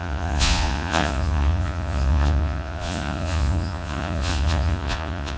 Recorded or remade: remade